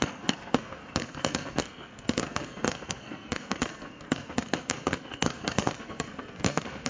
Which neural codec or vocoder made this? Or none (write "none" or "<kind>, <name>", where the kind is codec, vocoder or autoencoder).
codec, SNAC